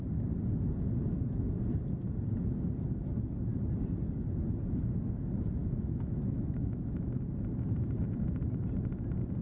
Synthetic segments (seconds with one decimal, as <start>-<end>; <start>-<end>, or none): 5.6-7.0